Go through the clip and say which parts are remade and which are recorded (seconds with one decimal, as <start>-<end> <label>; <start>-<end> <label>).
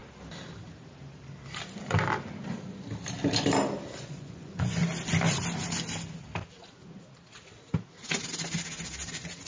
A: 0.0-4.0 recorded; 4.0-4.8 remade; 4.8-9.1 recorded; 9.1-9.5 remade